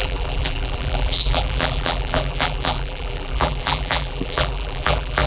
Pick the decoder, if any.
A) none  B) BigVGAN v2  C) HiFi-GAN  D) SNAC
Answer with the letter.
B